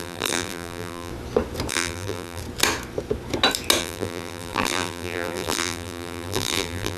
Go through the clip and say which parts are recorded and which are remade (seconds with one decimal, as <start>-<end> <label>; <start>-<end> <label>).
0.0-1.1 remade; 1.1-1.7 recorded; 1.7-2.4 remade; 2.4-3.8 recorded; 3.8-7.0 remade

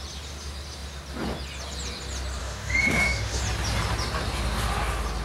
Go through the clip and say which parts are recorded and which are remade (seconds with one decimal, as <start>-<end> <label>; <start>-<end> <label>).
0.0-2.4 recorded; 2.4-3.4 remade; 3.4-5.2 recorded

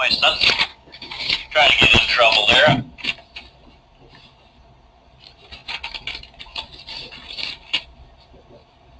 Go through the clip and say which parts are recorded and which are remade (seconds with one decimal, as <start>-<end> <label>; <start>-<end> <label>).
0.0-0.7 recorded; 0.7-1.5 remade; 1.5-9.0 recorded

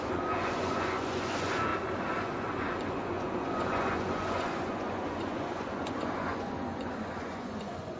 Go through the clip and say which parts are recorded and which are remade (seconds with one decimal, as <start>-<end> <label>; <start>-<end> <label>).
0.0-1.7 remade; 1.7-2.2 recorded; 2.2-8.0 remade

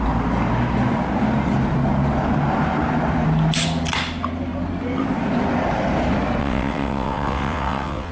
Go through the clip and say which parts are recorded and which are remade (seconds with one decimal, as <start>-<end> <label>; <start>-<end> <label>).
0.0-6.4 recorded; 6.4-8.1 remade

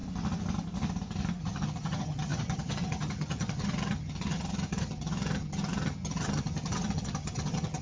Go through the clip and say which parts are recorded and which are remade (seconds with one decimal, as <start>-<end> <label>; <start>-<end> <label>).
0.0-1.4 recorded; 1.4-7.8 remade